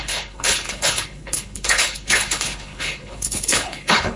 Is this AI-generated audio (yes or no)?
yes